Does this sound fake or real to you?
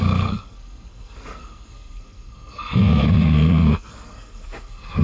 fake